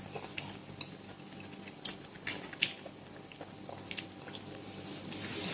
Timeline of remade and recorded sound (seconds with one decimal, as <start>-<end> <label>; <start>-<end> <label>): 0.0-5.5 recorded